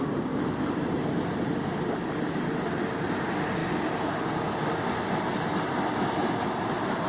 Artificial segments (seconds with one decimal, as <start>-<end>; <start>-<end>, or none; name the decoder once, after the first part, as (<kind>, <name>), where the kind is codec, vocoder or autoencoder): none